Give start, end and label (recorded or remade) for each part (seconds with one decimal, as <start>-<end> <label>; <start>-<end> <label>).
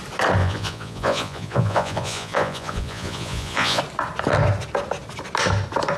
0.0-0.4 recorded; 0.4-3.8 remade; 3.8-6.0 recorded